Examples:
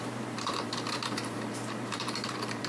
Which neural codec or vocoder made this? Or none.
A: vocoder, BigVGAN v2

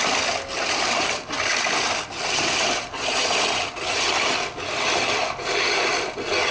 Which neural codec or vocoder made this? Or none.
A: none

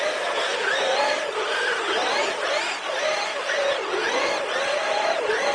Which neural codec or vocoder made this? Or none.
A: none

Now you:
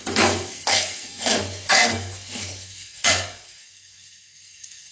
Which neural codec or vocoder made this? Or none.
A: codec, SNAC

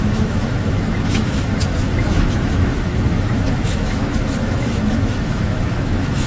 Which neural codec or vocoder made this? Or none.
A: autoencoder, DAC-VAE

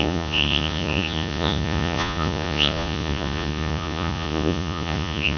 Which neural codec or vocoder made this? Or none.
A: vocoder, Vocos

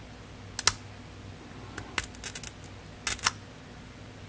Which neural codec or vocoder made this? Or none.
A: none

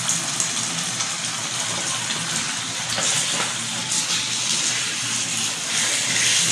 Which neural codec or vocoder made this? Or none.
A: none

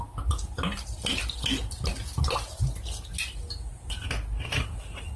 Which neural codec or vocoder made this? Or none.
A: none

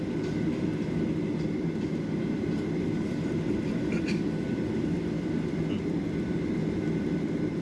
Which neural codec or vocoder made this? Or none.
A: none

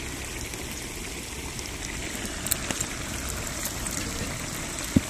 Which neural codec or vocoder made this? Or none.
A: none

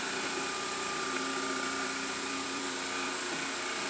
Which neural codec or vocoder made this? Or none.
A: vocoder, BigVGAN v2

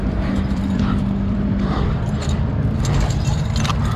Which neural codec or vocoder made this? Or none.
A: vocoder, BigVGAN v2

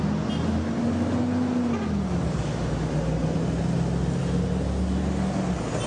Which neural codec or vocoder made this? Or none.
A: none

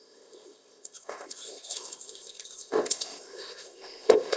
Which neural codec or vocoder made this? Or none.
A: codec, ZipCodec